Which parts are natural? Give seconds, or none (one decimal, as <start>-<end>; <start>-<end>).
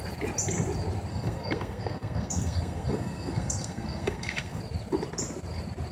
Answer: 0.0-1.1; 4.6-5.9